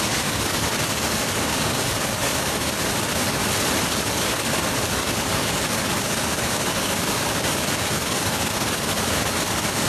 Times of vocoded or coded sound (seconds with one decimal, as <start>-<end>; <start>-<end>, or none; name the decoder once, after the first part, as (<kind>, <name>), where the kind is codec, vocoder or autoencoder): 0.0-3.4 (codec, DAC); 3.9-9.9